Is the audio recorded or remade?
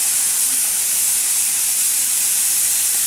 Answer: remade